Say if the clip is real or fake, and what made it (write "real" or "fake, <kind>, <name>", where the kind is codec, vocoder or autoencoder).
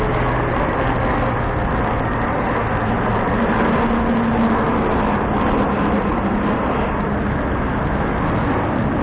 real